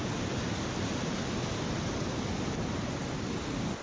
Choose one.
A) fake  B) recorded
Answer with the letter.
B